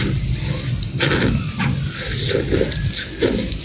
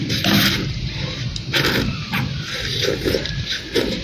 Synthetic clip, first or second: second